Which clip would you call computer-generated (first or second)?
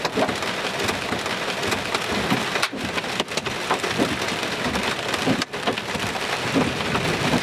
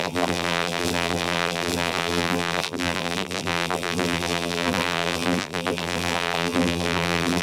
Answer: second